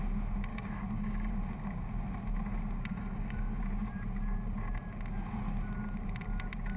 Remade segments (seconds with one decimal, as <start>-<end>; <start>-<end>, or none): 0.5-1.3; 2.9-3.6